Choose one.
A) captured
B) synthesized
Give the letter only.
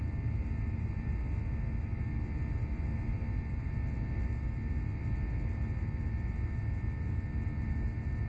A